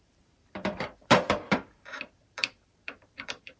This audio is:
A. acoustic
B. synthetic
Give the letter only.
B